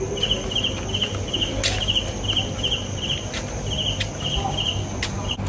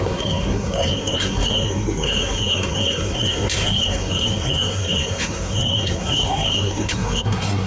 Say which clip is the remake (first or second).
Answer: second